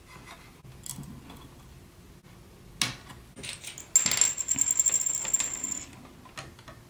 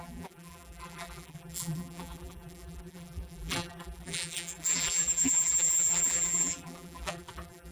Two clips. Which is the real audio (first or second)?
first